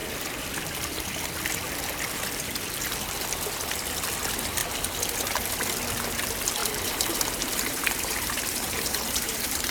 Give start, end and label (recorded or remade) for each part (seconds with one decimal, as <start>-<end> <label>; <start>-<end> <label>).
0.0-6.6 recorded; 6.6-9.7 remade